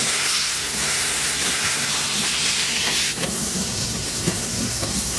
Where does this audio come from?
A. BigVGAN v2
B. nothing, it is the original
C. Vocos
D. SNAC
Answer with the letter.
D